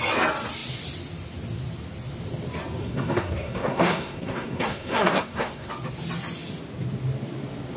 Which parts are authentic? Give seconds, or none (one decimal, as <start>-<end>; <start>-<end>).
0.0-2.8; 5.7-7.8